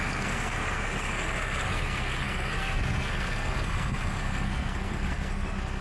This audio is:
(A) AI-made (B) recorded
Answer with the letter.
A